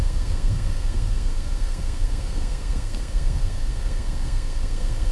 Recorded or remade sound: remade